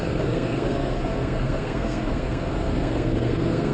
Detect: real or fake fake